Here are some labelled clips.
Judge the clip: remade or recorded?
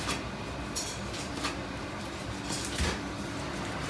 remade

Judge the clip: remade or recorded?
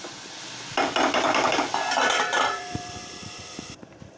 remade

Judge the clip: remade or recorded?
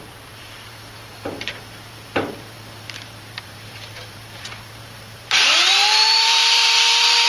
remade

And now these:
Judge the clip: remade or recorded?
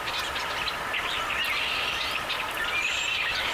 recorded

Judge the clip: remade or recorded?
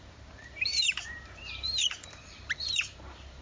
remade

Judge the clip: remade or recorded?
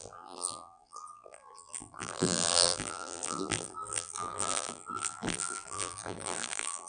remade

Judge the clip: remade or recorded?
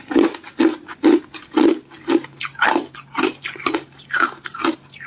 recorded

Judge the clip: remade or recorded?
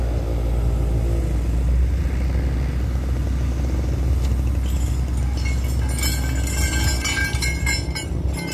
recorded